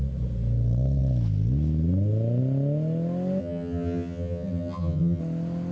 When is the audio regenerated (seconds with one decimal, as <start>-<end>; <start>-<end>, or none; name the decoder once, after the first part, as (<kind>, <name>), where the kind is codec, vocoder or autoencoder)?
3.4-5.2 (vocoder, HiFi-GAN)